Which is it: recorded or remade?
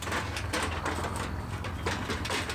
recorded